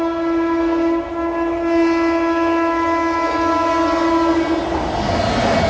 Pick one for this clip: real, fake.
real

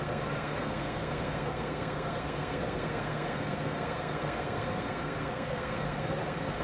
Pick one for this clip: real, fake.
fake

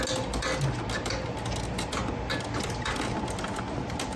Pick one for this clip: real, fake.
real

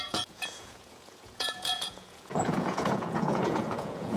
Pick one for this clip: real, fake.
fake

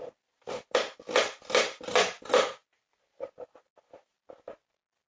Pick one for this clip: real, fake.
real